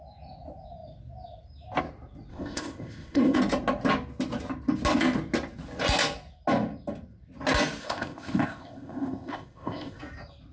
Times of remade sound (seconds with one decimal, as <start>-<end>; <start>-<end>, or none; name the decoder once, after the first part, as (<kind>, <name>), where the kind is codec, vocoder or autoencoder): 2.3-3.4 (codec, ZipCodec); 7.8-10.0